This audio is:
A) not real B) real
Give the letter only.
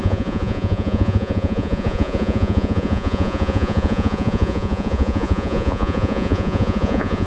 A